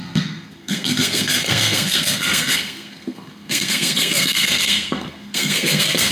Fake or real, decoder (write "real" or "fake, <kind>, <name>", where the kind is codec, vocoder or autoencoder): fake, codec, SNAC